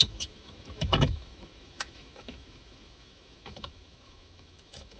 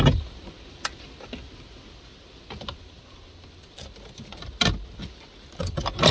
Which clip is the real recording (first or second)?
second